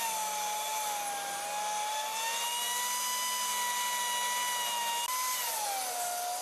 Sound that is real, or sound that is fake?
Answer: real